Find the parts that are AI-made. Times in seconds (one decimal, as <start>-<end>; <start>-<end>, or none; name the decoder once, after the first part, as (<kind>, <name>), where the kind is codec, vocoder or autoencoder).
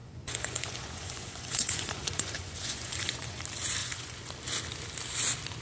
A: 0.0-3.4 (vocoder, Vocos); 3.8-4.3